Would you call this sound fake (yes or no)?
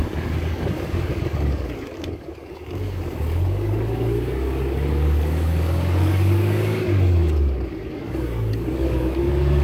yes